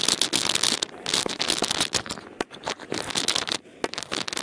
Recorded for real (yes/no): yes